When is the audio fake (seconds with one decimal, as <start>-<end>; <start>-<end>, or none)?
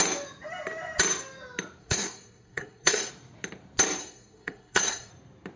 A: 1.8-3.1; 4.0-5.1